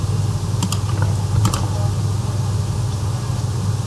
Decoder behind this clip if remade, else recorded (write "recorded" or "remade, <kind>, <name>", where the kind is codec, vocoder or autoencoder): recorded